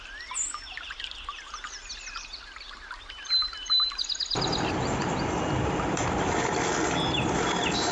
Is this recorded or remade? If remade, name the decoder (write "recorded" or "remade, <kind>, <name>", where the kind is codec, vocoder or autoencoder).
recorded